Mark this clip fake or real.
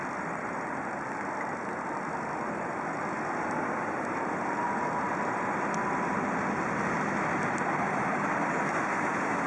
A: real